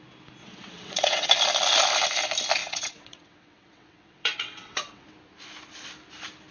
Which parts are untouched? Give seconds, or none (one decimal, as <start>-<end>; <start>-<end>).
0.0-0.4; 1.3-2.6; 5.1-6.5